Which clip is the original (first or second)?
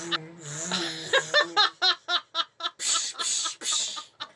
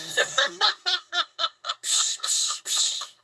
first